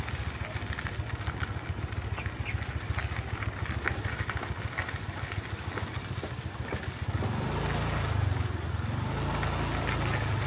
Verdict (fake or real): real